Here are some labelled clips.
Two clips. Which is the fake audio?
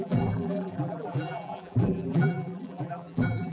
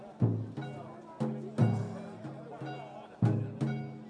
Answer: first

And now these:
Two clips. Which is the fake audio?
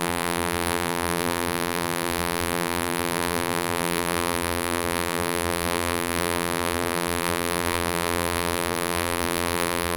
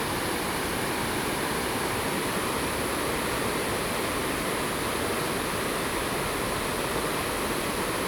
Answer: first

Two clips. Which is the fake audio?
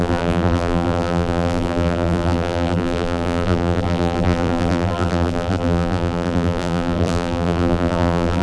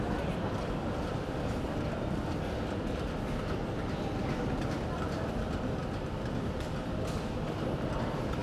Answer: first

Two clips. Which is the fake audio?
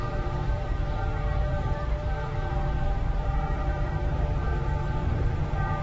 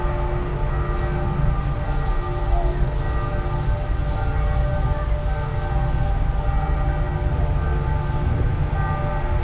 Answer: first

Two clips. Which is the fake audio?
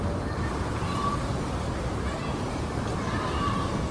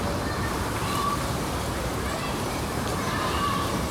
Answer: second